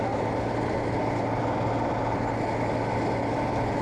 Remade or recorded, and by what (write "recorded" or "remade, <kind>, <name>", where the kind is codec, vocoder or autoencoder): recorded